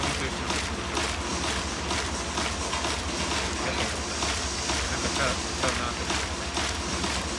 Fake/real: real